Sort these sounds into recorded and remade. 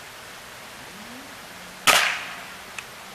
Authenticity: recorded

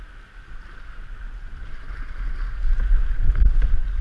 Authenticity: recorded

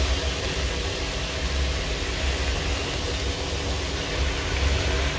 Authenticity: recorded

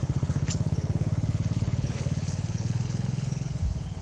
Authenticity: remade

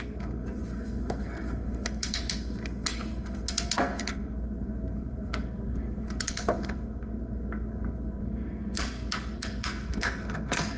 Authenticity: remade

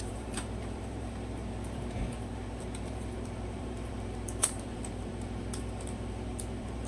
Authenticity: remade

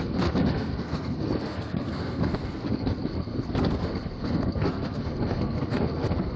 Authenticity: remade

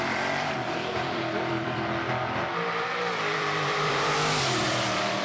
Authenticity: remade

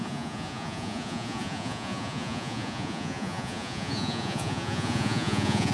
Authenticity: remade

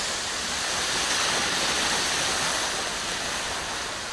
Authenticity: recorded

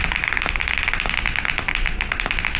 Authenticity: recorded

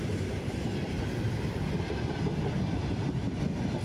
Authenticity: recorded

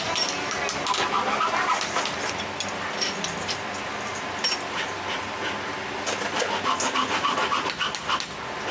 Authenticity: recorded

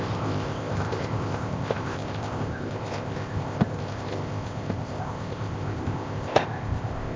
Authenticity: remade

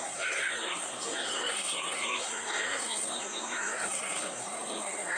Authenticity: remade